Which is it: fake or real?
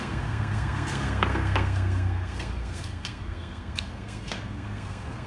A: fake